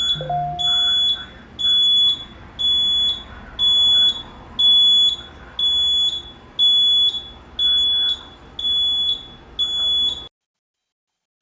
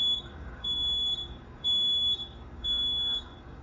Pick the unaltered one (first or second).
first